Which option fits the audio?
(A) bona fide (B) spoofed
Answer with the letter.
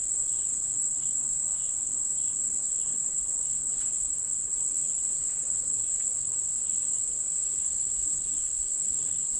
B